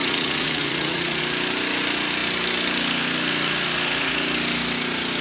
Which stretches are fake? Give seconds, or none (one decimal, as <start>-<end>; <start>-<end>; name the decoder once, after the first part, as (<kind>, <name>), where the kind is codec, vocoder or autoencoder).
0.0-1.2 (vocoder, Vocos)